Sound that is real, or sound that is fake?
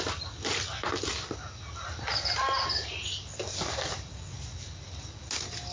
real